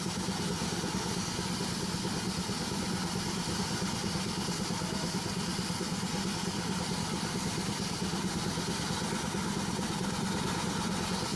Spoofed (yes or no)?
no